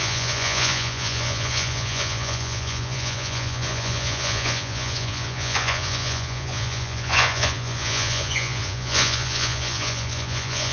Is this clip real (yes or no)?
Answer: no